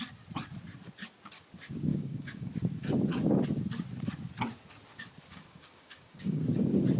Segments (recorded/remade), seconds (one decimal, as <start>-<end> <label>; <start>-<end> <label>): 0.0-1.9 recorded; 1.9-2.5 remade; 2.5-5.3 recorded; 5.3-6.4 remade; 6.4-7.0 recorded